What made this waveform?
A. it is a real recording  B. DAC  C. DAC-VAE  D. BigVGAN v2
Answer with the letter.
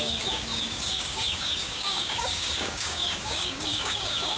B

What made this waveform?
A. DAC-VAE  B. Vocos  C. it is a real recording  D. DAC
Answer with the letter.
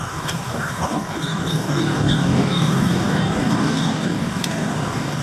D